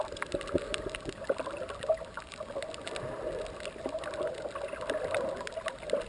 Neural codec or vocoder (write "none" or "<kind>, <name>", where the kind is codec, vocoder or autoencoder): none